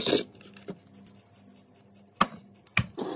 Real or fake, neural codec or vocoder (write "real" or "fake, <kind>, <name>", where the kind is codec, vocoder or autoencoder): real